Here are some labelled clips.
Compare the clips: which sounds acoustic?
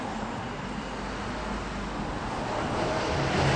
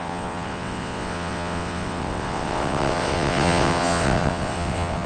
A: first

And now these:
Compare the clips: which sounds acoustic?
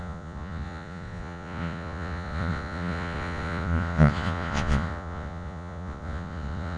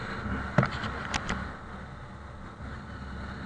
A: second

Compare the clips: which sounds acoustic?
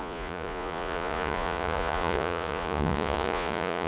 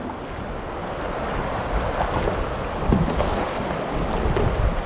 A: second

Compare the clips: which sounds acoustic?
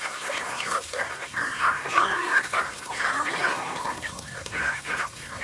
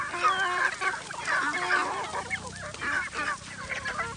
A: second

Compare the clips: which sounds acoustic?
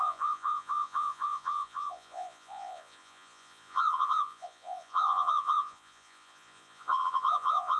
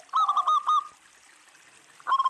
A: second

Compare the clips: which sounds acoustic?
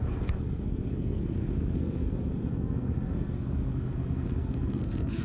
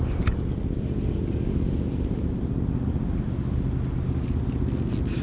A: second